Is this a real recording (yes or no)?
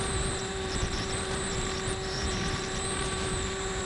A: no